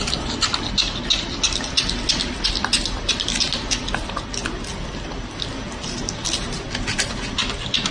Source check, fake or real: real